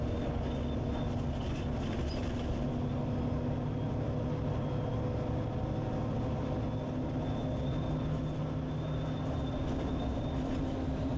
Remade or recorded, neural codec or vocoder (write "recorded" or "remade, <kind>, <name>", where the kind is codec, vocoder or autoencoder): recorded